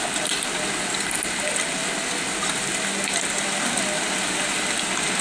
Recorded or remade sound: recorded